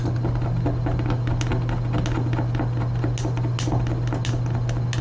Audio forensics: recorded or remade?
recorded